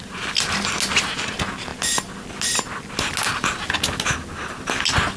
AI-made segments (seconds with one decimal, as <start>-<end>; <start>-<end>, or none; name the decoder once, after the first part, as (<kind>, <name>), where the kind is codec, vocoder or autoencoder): none